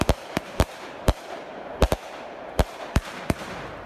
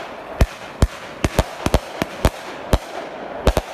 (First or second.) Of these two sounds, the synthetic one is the first